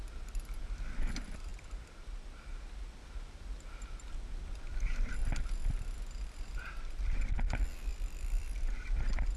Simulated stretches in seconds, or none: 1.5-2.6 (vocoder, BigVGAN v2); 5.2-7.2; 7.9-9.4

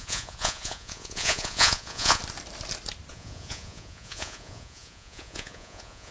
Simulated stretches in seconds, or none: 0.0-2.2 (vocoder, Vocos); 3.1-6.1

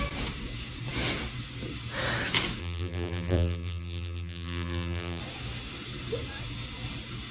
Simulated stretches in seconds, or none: 2.6-5.2 (vocoder, BigVGAN v2)

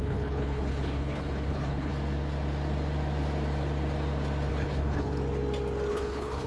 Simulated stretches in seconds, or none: 0.0-1.9 (codec, HILCodec); 4.5-5.1; 5.9-6.5

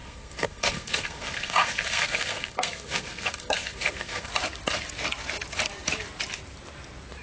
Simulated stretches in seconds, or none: 0.0-4.3 (codec, SNAC)